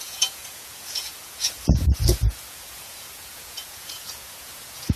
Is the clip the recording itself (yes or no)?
no